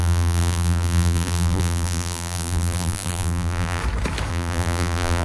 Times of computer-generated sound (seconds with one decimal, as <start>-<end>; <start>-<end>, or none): 0.0-3.8; 4.3-5.2